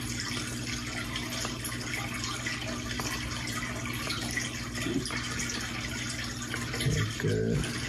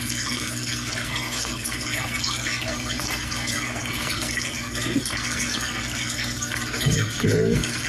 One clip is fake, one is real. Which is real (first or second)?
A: first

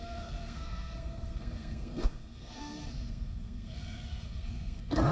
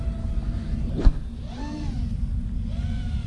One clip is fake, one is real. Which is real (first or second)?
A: second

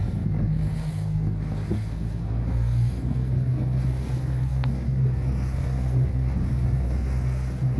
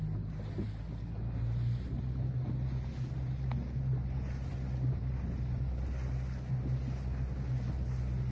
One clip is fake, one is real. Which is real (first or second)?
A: second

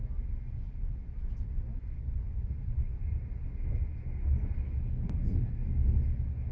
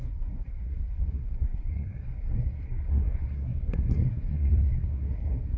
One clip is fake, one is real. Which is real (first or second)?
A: first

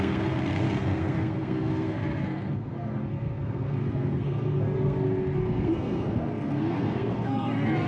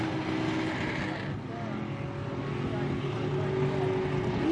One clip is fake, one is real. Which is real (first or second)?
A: second